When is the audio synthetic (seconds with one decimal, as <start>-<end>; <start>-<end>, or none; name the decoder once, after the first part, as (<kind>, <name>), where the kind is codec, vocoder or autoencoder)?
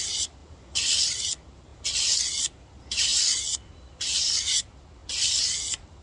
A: none